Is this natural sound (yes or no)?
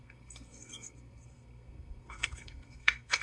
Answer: no